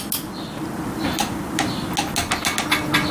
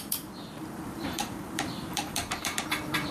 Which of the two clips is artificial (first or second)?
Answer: second